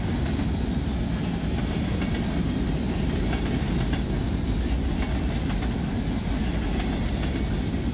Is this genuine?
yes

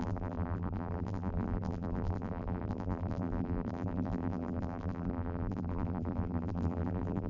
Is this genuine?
no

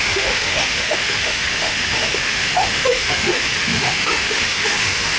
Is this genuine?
no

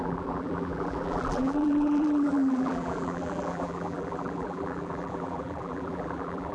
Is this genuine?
no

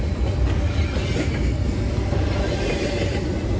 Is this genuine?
yes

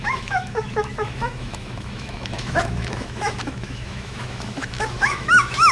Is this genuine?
no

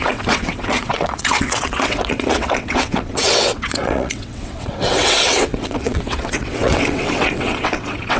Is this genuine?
no